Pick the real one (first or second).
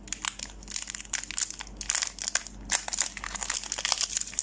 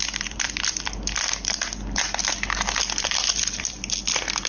first